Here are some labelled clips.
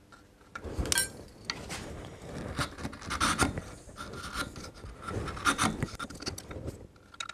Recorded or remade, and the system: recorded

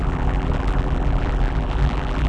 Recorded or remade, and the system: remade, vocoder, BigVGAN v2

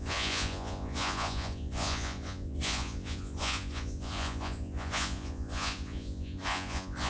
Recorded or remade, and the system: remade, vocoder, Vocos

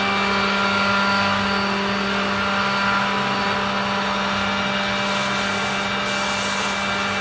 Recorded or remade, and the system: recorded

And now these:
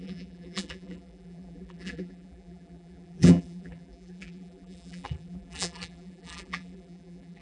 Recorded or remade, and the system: remade, vocoder, BigVGAN v2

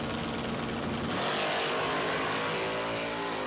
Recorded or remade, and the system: recorded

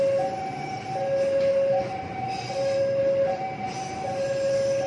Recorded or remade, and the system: recorded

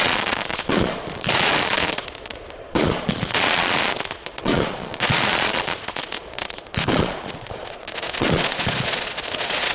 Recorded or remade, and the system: remade, vocoder, Vocos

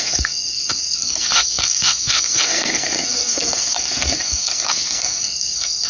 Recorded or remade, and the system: remade, codec, SNAC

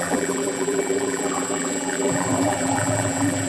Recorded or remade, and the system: remade, vocoder, BigVGAN v2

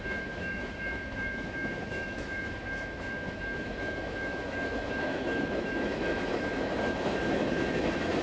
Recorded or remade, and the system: remade, autoencoder, DAC-VAE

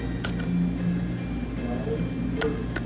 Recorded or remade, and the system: recorded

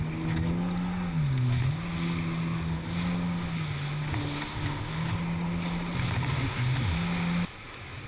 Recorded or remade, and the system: recorded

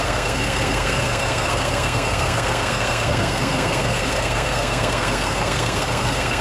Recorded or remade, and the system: remade, codec, SNAC